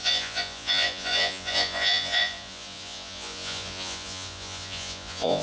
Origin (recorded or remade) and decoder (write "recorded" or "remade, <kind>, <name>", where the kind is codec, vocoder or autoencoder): remade, vocoder, Vocos